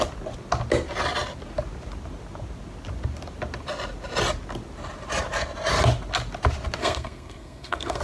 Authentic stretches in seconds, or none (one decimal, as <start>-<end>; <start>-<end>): 0.0-6.8